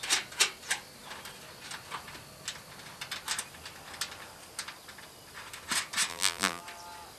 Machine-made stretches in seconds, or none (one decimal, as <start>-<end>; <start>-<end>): 6.1-6.6